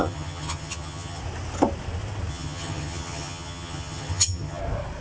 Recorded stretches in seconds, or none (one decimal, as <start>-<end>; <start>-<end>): 1.2-2.3; 4.6-5.0